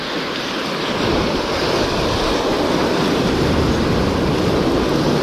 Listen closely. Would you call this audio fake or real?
real